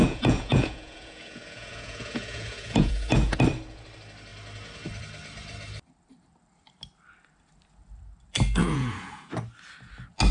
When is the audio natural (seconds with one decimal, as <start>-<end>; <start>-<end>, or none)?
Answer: 3.4-8.6; 9.3-10.3